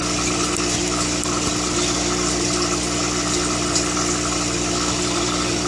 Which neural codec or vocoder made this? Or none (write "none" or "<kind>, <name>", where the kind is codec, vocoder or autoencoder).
none